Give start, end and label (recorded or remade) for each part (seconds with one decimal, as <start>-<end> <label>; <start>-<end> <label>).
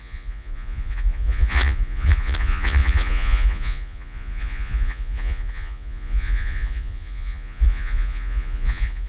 0.0-9.1 remade